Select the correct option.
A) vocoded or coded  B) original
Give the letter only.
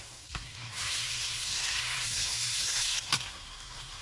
A